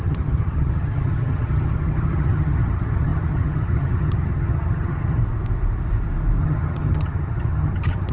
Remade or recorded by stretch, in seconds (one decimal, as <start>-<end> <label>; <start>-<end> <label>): 0.0-5.2 remade; 5.2-6.4 recorded; 6.4-8.1 remade

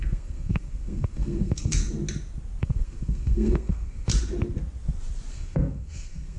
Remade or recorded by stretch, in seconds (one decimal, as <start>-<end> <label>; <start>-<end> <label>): 0.0-1.8 remade; 1.8-2.6 recorded; 2.6-4.1 remade; 4.1-5.3 recorded; 5.3-6.4 remade

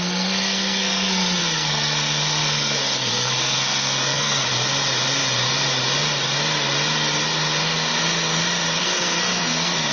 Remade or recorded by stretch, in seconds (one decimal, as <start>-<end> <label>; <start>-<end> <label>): 0.0-4.5 remade; 4.5-8.8 recorded; 8.8-9.9 remade

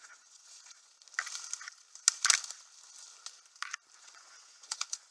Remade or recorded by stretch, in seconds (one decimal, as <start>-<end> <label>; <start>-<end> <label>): 0.0-0.9 remade; 0.9-4.0 recorded; 4.0-5.1 remade

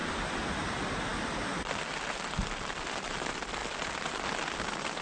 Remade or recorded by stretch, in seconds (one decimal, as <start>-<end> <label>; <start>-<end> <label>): 0.0-5.0 recorded

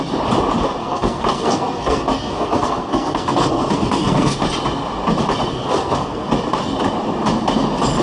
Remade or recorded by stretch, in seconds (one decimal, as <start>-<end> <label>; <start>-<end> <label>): 0.0-0.8 recorded; 0.8-4.4 remade; 4.4-5.5 recorded; 5.5-6.3 remade; 6.3-8.0 recorded